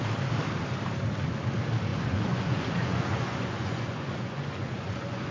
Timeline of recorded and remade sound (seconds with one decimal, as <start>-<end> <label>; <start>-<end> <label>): 0.0-1.9 recorded; 1.9-5.3 remade